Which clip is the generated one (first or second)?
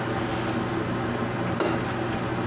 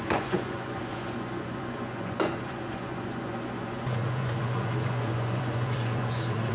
second